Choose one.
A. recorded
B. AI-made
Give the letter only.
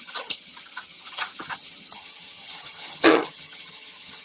B